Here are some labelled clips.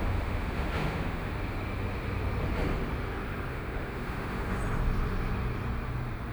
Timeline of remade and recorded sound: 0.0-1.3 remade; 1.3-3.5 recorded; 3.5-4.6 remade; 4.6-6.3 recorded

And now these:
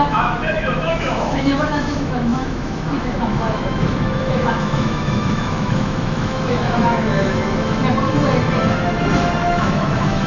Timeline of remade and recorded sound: 0.0-7.8 remade; 7.8-9.4 recorded; 9.4-10.3 remade

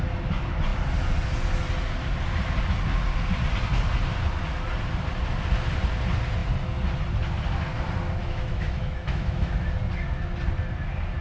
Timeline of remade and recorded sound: 0.0-8.2 recorded; 8.2-9.7 remade; 9.7-11.2 recorded

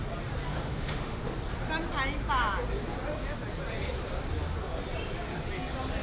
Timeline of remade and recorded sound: 0.0-0.5 recorded; 0.5-1.2 remade; 1.2-6.0 recorded

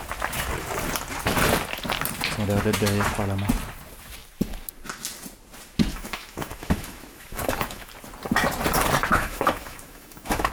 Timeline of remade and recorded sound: 0.0-5.9 recorded; 5.9-7.9 remade; 7.9-9.1 recorded; 9.1-10.5 remade

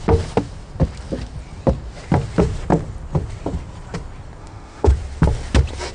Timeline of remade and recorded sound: 0.0-4.4 recorded; 4.4-4.9 remade; 4.9-5.9 recorded

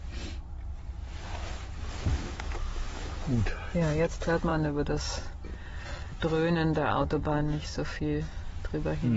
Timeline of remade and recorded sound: 0.0-2.1 recorded; 2.1-3.2 remade; 3.2-6.9 recorded; 6.9-8.0 remade; 8.0-9.2 recorded